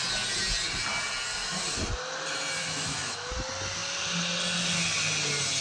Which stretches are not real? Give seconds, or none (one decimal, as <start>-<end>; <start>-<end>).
2.6-3.3